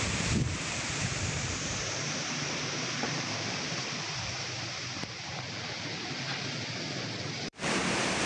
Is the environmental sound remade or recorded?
remade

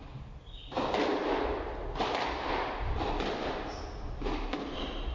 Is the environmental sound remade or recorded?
recorded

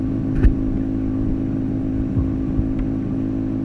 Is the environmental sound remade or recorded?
recorded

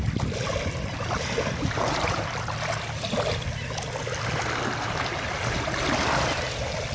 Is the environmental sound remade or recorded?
recorded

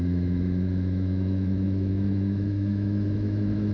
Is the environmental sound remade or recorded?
remade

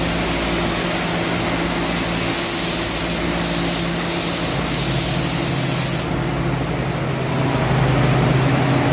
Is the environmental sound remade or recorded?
recorded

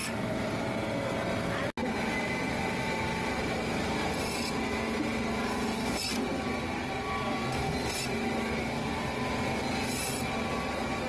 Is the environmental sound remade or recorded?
recorded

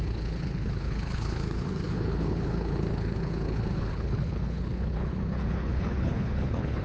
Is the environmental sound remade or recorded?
remade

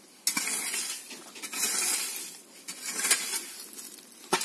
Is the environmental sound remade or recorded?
recorded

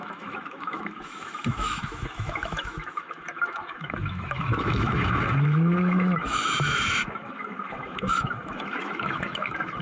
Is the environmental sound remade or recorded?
remade